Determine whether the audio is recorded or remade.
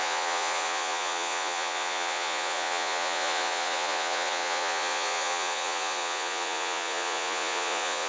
remade